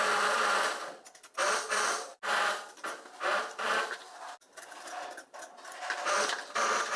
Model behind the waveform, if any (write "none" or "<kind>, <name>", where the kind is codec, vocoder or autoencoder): none